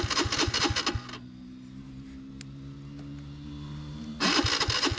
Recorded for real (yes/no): yes